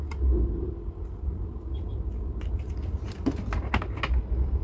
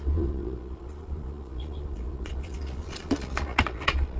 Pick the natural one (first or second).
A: first